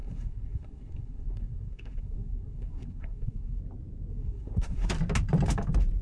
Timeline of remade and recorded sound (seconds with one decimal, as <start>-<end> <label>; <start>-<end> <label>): 0.0-3.6 remade; 3.6-4.1 recorded; 4.1-4.9 remade; 4.9-6.0 recorded